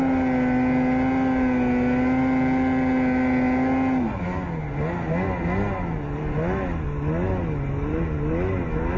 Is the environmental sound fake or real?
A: real